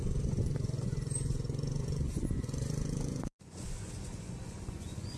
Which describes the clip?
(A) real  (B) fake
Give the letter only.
B